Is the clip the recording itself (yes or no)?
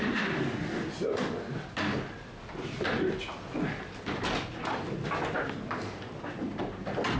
yes